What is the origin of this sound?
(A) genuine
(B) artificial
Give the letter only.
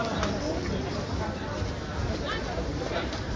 A